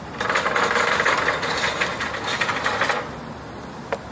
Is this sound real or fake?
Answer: real